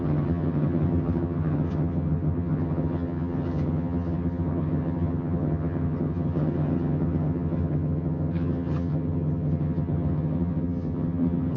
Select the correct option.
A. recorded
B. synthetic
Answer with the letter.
B